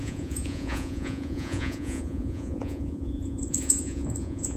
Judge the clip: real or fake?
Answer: fake